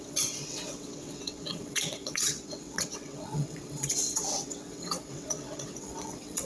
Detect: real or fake fake